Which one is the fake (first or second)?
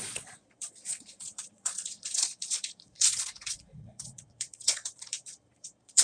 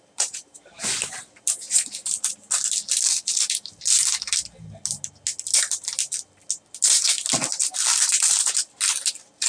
first